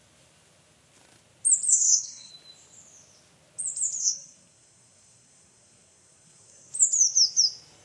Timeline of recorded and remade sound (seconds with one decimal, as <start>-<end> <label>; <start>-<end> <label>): 0.0-1.7 recorded; 1.7-2.3 remade; 2.3-4.0 recorded; 4.0-6.7 remade; 6.7-7.8 recorded